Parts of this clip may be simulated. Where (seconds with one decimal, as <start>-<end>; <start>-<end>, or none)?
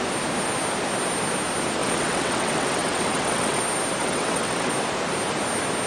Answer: 1.8-3.6; 4.0-4.7